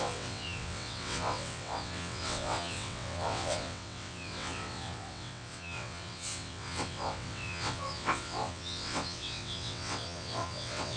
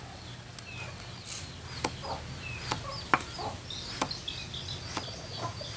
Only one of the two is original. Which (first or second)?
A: second